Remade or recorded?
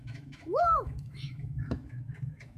remade